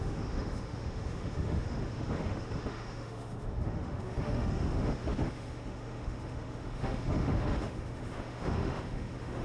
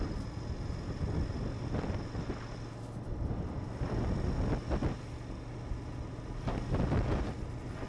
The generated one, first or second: first